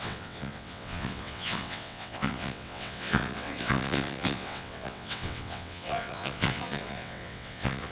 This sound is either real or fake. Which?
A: fake